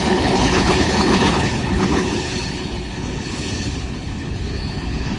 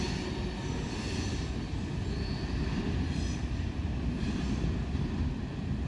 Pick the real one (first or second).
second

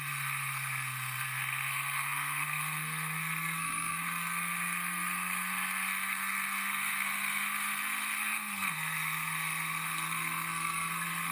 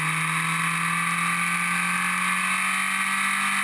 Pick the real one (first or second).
second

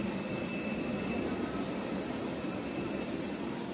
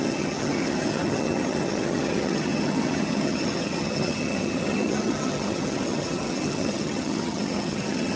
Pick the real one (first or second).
first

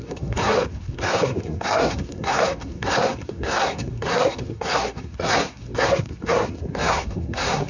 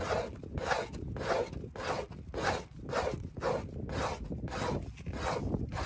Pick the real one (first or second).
second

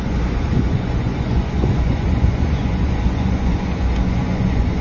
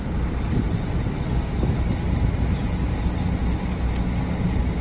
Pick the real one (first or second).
second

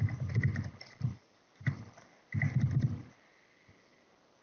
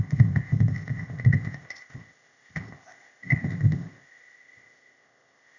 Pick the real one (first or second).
first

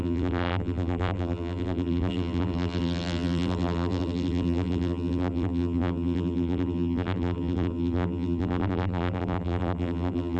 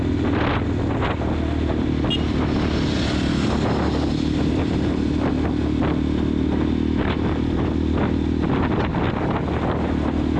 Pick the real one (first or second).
second